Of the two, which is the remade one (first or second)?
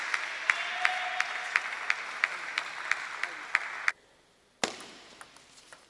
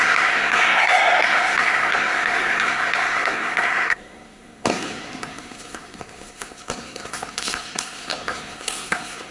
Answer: second